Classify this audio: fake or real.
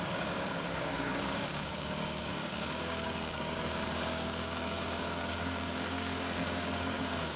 fake